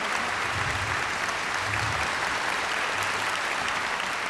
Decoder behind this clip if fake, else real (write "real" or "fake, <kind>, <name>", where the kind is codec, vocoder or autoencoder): real